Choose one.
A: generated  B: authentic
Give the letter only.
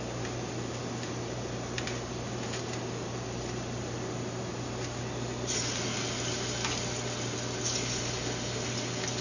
B